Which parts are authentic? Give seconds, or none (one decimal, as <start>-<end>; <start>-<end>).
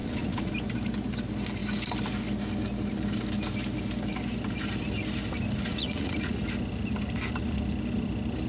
0.5-5.7; 6.4-8.5